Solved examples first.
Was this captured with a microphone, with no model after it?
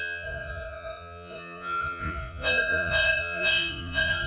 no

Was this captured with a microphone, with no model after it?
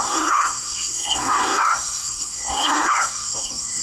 no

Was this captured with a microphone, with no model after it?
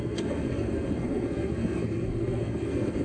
no